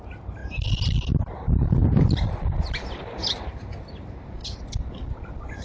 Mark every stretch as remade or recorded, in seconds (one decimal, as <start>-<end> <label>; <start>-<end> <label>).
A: 0.0-5.6 recorded